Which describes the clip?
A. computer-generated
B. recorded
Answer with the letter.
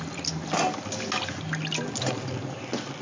B